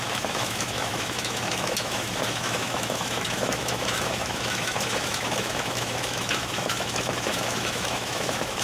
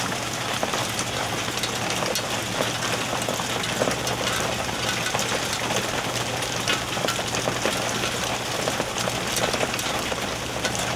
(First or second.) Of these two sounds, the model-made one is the first